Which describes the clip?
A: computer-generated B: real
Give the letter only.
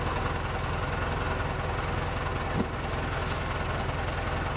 B